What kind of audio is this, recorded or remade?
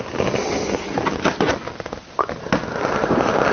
recorded